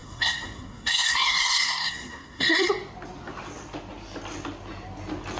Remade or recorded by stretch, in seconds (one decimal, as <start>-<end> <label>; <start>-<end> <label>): 0.0-2.7 remade; 2.7-5.4 recorded